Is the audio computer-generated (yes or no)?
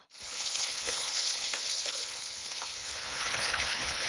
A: yes